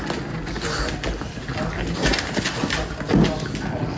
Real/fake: real